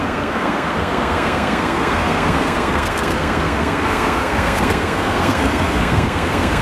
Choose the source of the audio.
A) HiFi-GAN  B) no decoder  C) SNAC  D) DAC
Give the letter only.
C